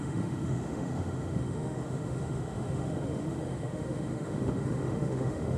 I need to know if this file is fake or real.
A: fake